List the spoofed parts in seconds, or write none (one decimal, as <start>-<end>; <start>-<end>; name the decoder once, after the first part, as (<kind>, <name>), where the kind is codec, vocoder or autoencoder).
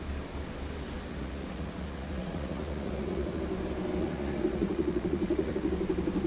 1.1-3.4 (vocoder, Vocos); 4.0-5.7